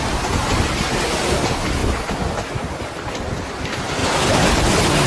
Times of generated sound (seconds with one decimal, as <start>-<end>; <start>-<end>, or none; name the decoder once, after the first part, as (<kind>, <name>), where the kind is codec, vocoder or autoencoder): 1.8-3.5 (vocoder, BigVGAN v2); 4.0-4.5